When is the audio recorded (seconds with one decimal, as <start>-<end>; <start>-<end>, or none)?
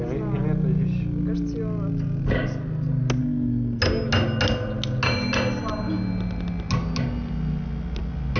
0.0-3.2; 3.8-8.4